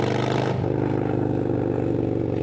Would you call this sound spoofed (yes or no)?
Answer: no